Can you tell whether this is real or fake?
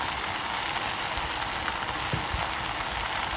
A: real